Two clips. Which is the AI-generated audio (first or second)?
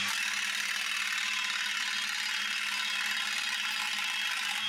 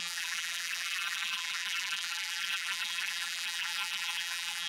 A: second